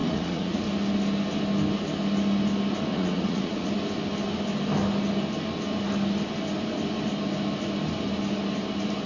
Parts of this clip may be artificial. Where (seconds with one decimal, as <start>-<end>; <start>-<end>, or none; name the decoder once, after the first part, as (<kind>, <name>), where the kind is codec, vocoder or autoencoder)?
0.0-0.6 (vocoder, Vocos); 2.9-3.7